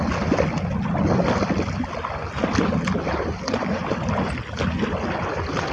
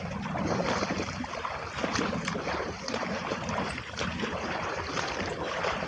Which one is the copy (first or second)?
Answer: second